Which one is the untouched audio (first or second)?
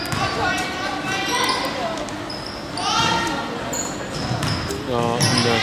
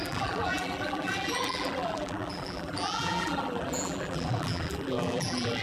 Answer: first